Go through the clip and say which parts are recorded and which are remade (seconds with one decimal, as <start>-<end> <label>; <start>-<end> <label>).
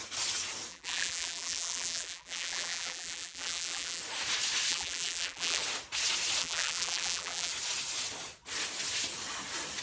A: 0.0-0.7 recorded; 0.7-4.0 remade; 4.0-4.7 recorded; 4.7-5.6 remade; 5.6-6.4 recorded; 6.4-7.5 remade; 7.5-9.8 recorded